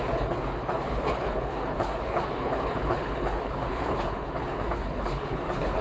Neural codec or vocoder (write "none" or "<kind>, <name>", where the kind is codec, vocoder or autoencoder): codec, HILCodec